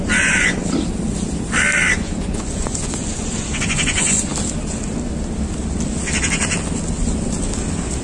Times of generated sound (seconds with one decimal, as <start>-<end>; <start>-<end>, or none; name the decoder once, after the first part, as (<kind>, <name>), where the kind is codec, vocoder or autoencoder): 0.0-0.6 (vocoder, Vocos); 1.9-4.3